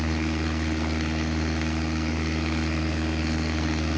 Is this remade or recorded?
remade